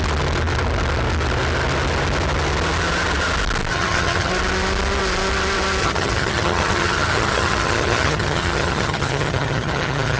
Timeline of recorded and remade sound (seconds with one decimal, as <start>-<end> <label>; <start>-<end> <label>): 0.0-3.7 recorded; 3.7-4.3 remade; 4.3-5.8 recorded; 5.8-10.2 remade